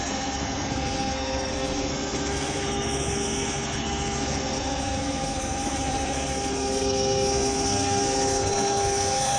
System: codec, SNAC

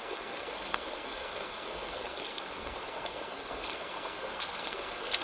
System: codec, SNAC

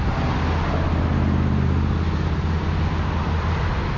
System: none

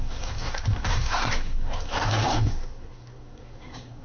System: codec, SNAC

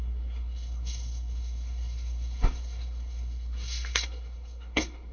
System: codec, SNAC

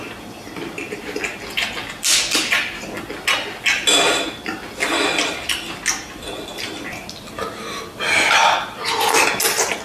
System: none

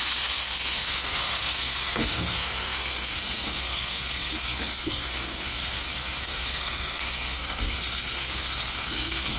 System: codec, SNAC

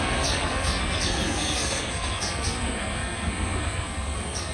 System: codec, SNAC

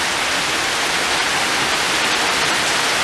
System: none